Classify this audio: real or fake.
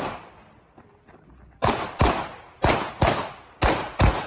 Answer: real